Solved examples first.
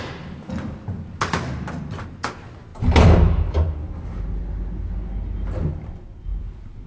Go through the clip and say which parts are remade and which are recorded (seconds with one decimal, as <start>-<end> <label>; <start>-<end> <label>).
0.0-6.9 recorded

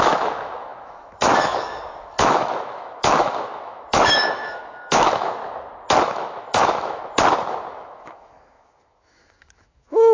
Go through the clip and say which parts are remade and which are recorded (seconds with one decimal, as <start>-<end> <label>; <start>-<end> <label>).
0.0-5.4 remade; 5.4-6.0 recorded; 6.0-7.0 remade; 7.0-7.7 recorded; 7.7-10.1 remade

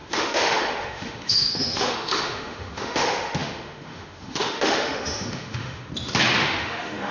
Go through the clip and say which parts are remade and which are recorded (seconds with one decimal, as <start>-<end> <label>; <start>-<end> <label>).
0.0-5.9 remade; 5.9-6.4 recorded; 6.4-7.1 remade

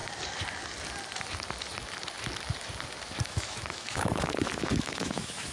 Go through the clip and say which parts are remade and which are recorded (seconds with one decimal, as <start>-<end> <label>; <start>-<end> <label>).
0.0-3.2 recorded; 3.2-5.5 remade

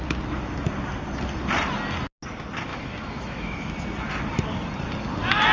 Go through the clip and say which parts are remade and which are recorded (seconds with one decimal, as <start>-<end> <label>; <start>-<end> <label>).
0.0-2.7 recorded; 2.7-3.7 remade; 3.7-5.5 recorded